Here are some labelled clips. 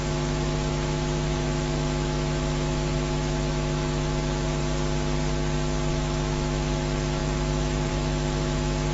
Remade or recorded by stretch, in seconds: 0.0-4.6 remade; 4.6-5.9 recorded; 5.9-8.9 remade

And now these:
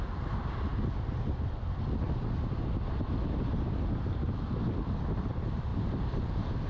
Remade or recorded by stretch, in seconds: 0.0-5.7 recorded; 5.7-6.7 remade

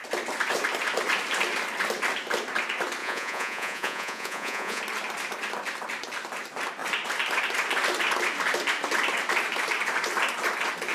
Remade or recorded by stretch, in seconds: 0.0-3.0 recorded; 3.0-4.8 remade; 4.8-10.9 recorded

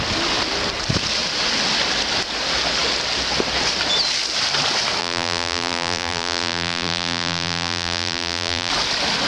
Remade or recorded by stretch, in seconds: 0.0-5.0 recorded; 5.0-8.7 remade; 8.7-9.3 recorded

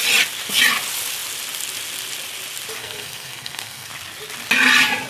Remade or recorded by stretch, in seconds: 0.0-2.8 recorded; 2.8-3.9 remade; 3.9-5.1 recorded

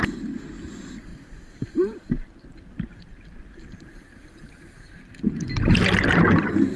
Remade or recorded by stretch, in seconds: 0.0-1.1 recorded; 1.1-5.2 remade; 5.2-6.8 recorded